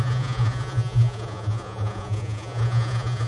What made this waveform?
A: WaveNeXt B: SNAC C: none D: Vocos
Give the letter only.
D